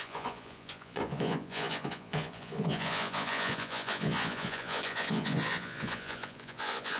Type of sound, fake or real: fake